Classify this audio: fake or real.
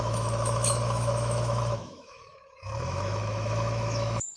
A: fake